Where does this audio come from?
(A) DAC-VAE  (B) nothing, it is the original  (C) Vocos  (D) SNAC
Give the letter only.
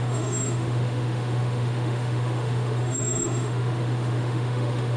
A